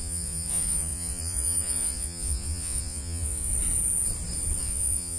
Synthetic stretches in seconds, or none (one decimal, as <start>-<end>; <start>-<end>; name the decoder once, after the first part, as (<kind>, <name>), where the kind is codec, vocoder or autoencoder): 0.0-3.5 (vocoder, Vocos); 4.6-5.2